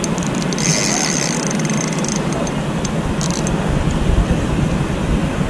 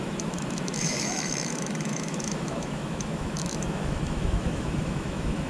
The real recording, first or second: first